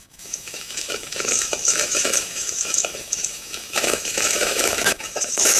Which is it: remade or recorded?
remade